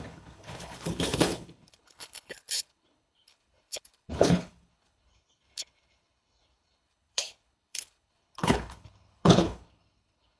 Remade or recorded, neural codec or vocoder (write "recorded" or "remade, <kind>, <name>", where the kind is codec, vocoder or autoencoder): remade, codec, HILCodec